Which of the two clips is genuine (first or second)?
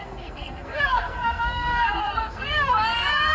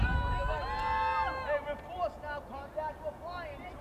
second